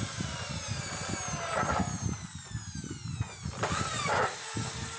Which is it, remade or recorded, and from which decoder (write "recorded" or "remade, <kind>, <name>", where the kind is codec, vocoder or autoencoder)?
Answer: recorded